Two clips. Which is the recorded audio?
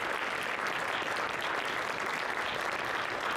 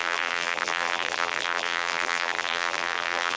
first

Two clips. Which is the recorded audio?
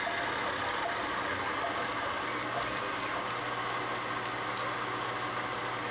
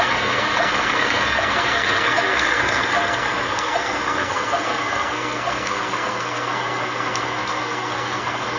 first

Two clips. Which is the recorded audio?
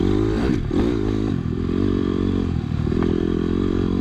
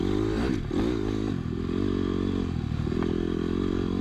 second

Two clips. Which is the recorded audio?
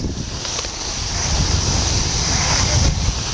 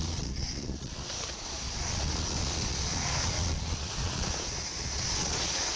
first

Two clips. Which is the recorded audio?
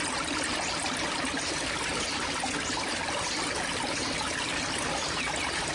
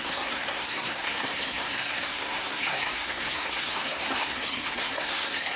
first